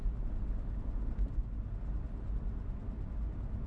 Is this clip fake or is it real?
real